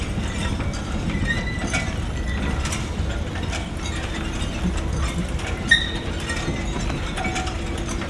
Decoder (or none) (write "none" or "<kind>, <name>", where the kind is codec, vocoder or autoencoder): none